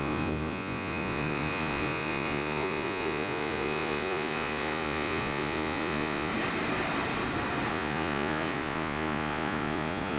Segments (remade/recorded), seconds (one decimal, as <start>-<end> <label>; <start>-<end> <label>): 0.0-6.3 remade; 6.3-7.7 recorded; 7.7-10.2 remade